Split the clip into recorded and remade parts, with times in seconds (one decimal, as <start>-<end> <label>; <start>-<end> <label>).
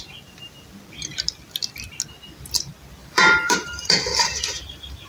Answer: 0.0-3.0 recorded; 3.0-5.1 remade